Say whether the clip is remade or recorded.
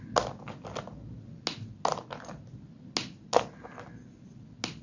recorded